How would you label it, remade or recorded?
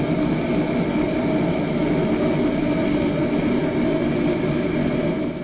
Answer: recorded